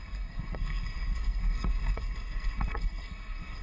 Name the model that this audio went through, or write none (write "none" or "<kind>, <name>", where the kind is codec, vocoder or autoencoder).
codec, SNAC